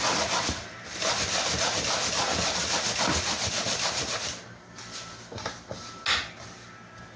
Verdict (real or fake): real